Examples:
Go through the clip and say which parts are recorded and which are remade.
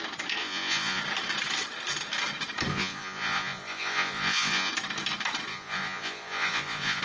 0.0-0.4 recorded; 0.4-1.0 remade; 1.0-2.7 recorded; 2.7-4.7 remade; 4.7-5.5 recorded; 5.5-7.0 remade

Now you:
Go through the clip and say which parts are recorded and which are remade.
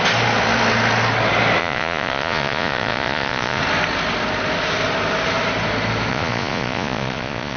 0.0-1.6 recorded; 1.6-3.6 remade; 3.6-6.1 recorded; 6.1-7.6 remade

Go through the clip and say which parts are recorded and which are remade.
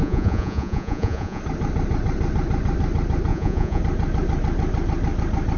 0.0-1.4 remade; 1.4-3.3 recorded; 3.3-3.8 remade; 3.8-5.6 recorded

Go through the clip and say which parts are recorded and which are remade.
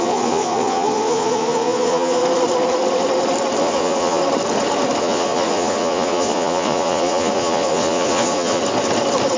0.0-2.2 remade; 2.2-3.6 recorded; 3.6-4.2 remade; 4.2-5.0 recorded; 5.0-8.6 remade; 8.6-9.4 recorded